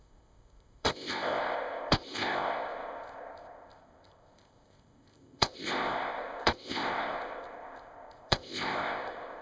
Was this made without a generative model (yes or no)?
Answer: no